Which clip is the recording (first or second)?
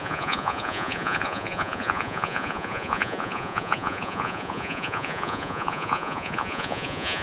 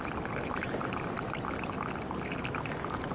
second